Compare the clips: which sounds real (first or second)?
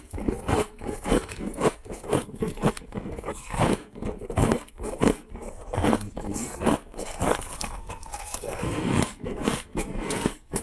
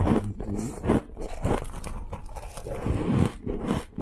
second